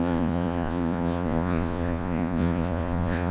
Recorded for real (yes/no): no